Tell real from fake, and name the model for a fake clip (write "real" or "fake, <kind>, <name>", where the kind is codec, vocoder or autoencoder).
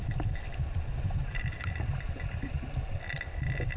real